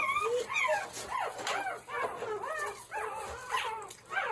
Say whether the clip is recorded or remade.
recorded